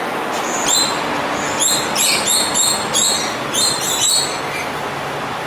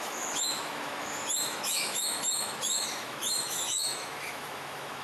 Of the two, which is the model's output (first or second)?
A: second